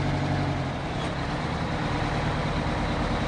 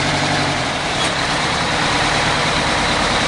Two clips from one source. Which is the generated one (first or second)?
second